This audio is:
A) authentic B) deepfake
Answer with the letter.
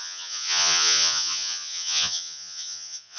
B